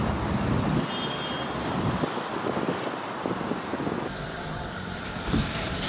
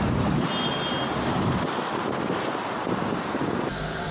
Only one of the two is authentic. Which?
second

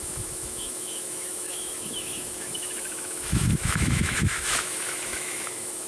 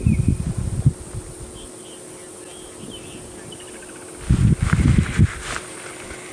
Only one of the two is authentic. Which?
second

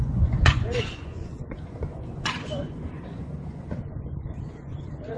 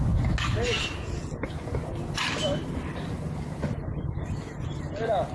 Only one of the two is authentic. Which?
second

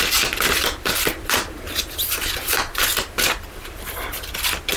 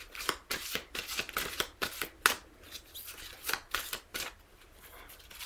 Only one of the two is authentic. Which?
second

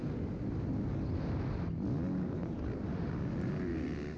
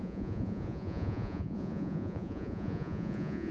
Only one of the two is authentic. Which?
first